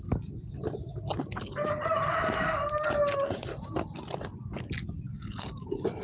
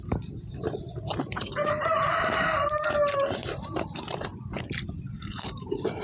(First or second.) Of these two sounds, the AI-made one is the second